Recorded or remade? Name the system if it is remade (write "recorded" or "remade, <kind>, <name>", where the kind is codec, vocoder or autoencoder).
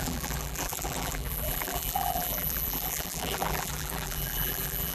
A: remade, vocoder, BigVGAN v2